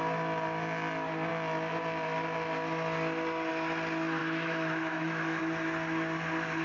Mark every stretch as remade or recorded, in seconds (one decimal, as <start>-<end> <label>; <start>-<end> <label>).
0.0-4.2 recorded; 4.2-5.4 remade; 5.4-6.6 recorded